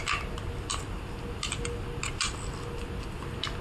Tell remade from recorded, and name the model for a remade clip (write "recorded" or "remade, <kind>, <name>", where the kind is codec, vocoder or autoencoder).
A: recorded